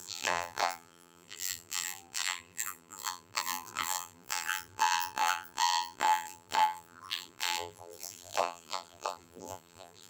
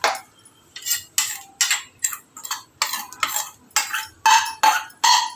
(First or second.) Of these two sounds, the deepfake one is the first